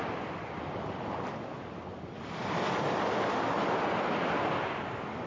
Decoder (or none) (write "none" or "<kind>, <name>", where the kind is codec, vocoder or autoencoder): none